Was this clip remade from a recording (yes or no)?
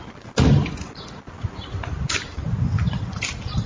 no